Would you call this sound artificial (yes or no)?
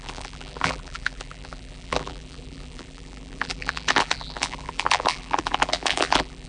yes